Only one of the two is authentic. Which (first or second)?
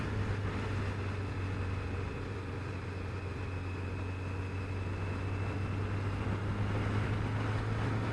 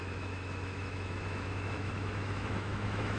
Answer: first